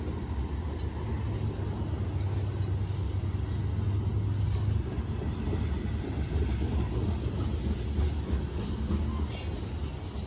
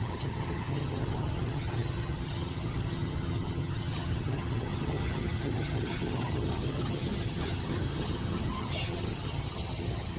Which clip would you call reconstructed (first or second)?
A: second